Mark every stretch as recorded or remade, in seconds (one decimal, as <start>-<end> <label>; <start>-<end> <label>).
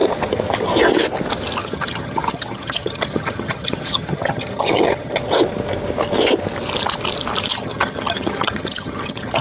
0.0-1.6 recorded; 1.6-5.2 remade; 5.2-7.5 recorded; 7.5-9.4 remade